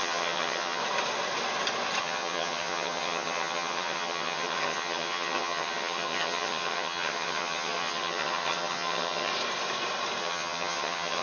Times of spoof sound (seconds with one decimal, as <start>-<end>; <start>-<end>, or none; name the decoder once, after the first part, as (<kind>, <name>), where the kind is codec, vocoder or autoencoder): 0.0-0.8 (vocoder, HiFi-GAN); 2.0-9.3; 10.2-11.2